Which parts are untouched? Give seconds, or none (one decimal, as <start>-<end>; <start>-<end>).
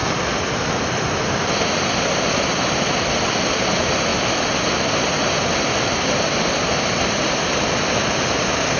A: 0.0-8.8